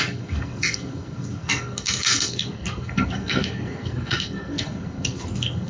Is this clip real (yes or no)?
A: no